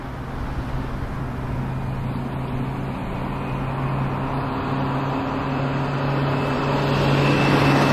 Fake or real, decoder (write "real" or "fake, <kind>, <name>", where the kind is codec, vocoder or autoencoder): real